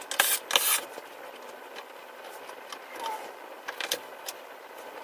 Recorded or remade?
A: recorded